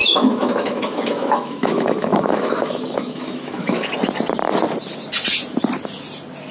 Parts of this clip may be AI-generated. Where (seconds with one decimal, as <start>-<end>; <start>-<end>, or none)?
0.0-3.9